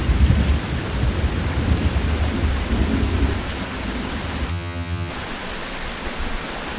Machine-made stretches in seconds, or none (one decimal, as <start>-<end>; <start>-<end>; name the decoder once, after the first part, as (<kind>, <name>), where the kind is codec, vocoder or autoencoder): 4.5-5.1 (vocoder, HiFi-GAN)